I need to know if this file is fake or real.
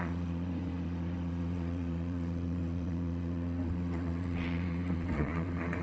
fake